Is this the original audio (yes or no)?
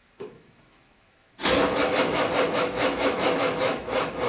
no